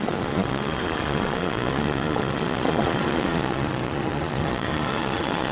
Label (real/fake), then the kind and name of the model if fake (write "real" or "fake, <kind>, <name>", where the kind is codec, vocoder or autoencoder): fake, vocoder, Vocos